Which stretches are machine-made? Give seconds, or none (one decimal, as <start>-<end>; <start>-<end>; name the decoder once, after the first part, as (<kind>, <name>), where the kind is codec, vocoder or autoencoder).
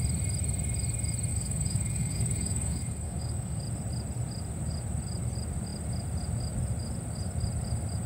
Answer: 1.3-3.6 (codec, DAC)